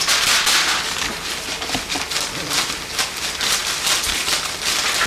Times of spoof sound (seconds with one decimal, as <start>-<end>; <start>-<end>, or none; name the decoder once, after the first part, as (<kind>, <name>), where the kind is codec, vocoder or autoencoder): none